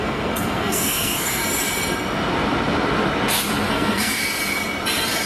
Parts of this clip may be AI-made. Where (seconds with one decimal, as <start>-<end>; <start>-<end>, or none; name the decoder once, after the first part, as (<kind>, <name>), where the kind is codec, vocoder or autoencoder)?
0.0-1.4 (codec, SNAC); 3.7-4.2